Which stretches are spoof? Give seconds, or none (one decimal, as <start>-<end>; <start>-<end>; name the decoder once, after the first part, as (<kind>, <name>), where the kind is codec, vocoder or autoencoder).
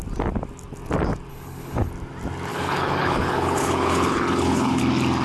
1.3-1.9 (codec, HILCodec); 2.5-4.8